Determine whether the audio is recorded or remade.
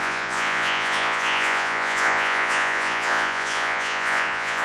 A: remade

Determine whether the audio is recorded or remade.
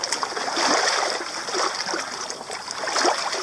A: recorded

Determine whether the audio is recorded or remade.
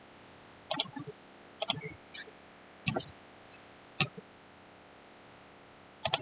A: recorded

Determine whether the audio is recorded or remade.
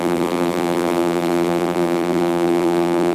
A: remade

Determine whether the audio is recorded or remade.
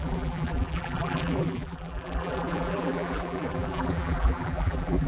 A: remade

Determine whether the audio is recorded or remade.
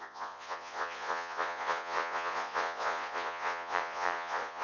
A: remade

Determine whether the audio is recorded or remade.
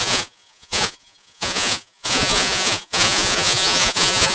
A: remade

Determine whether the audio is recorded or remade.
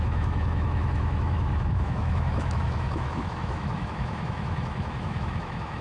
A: remade